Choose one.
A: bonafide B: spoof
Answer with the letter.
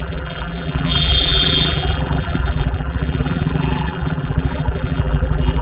B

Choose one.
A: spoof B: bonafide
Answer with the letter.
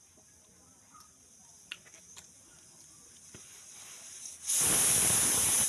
B